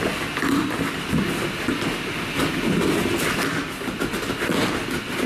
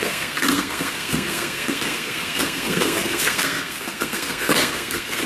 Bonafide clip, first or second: first